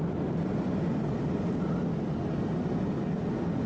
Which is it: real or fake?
real